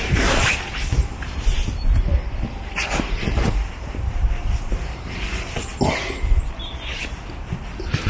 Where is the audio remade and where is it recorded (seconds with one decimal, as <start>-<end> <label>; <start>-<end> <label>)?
0.0-5.7 remade; 5.7-7.0 recorded; 7.0-8.1 remade

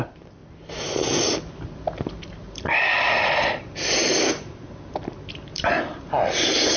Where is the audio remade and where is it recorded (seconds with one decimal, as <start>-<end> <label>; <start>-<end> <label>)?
0.0-4.0 recorded; 4.0-4.7 remade; 4.7-6.8 recorded